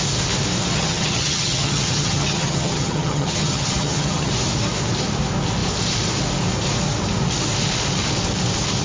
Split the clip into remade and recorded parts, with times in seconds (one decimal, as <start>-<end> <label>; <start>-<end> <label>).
0.0-0.7 recorded; 0.7-4.3 remade; 4.3-8.8 recorded